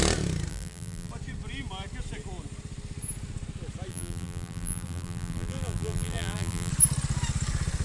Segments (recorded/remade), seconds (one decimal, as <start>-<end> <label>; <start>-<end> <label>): 0.0-0.5 recorded; 0.5-1.1 remade; 1.1-3.9 recorded; 3.9-6.7 remade; 6.7-7.8 recorded